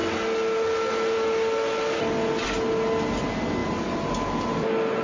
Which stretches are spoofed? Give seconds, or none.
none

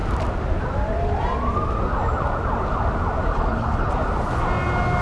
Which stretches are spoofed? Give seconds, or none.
3.3-3.9 (codec, HILCodec)

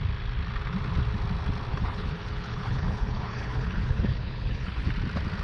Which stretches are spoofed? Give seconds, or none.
1.7-4.9 (codec, HILCodec)

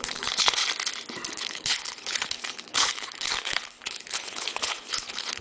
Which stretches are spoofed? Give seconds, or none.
0.0-0.6 (codec, HILCodec); 1.3-5.4

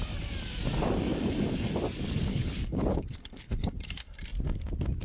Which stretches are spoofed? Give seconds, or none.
2.3-3.8 (codec, HILCodec)

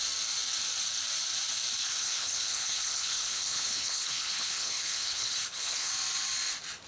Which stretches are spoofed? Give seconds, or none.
1.8-5.9 (codec, HILCodec)